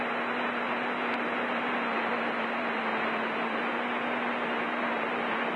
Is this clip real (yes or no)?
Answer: yes